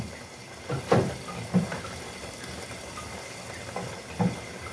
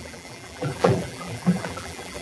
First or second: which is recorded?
first